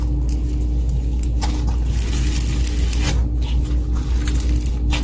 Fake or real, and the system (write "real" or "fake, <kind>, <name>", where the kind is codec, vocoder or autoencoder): real